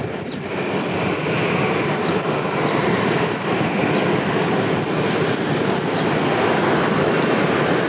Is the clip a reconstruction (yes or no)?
no